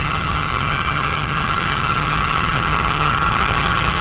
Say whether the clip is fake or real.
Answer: fake